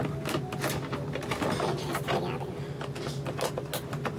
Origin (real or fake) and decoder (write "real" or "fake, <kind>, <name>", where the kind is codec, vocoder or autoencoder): real